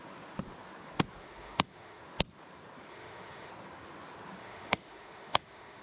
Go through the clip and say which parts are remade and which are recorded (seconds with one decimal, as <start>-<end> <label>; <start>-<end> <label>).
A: 0.0-1.2 recorded; 1.2-2.0 remade; 2.0-2.9 recorded; 2.9-3.5 remade; 3.5-4.4 recorded; 4.4-5.8 remade